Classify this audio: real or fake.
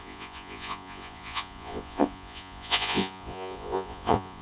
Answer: fake